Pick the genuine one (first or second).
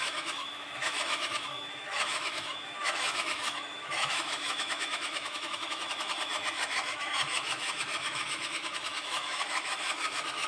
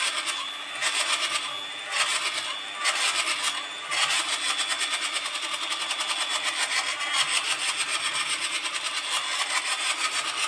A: second